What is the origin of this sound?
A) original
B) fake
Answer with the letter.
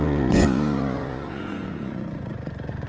B